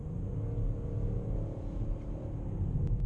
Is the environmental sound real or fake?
real